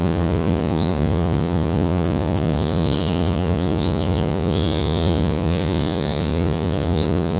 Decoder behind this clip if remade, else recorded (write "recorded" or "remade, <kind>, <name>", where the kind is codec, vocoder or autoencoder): remade, vocoder, Vocos